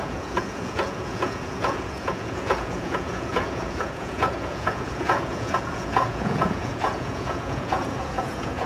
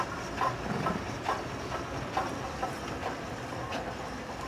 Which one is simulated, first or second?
first